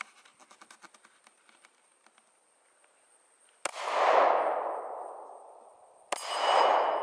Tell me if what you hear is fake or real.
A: real